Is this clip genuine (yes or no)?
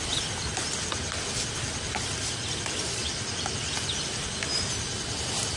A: yes